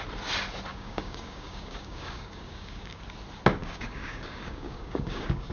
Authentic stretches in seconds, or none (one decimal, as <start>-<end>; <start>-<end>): 0.0-0.7; 3.0-3.6